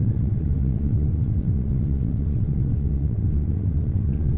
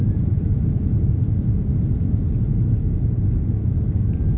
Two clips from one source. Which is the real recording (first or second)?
second